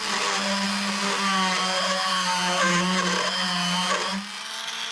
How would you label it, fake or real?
real